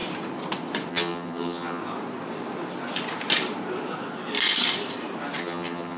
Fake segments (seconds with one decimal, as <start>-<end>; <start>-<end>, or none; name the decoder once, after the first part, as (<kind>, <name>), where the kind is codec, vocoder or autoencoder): 0.9-1.8 (vocoder, HiFi-GAN); 5.4-6.0